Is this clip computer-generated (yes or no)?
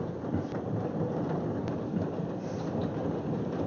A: no